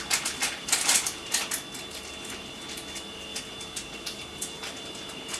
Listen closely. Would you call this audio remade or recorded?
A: recorded